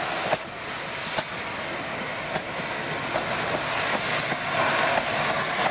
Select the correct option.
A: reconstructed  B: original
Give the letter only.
B